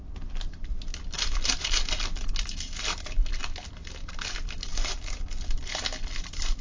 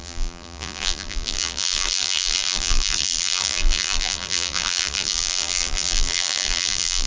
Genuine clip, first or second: first